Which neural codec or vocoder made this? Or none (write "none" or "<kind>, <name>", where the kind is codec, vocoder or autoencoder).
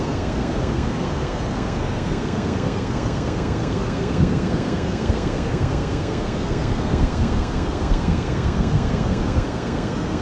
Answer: codec, SNAC